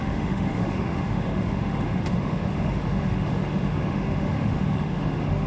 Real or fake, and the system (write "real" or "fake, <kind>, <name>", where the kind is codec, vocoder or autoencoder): fake, autoencoder, DAC-VAE